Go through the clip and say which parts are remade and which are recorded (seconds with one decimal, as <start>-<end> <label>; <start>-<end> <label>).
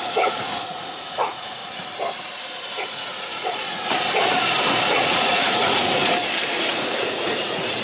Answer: 0.0-1.6 remade; 1.6-2.8 recorded; 2.8-3.8 remade; 3.8-4.9 recorded; 4.9-6.0 remade; 6.0-6.7 recorded; 6.7-7.8 remade